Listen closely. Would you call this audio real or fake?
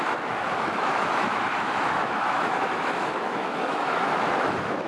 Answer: fake